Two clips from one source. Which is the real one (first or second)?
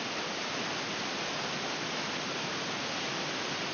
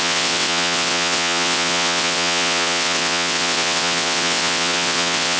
first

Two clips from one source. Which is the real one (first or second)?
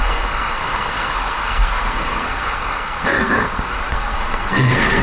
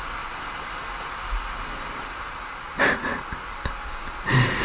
second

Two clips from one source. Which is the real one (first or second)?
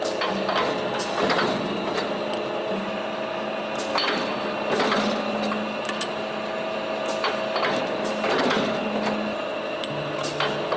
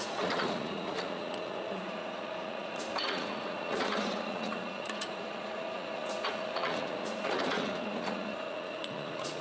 first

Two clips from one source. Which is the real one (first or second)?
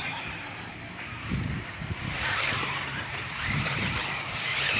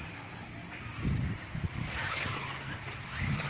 second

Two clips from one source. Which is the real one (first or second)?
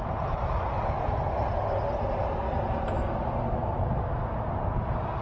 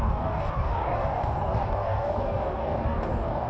first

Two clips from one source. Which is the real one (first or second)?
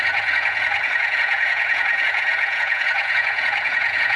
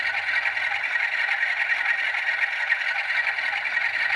second